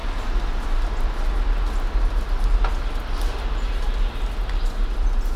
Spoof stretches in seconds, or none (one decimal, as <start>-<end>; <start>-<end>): none